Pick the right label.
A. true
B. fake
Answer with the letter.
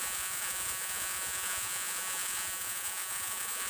B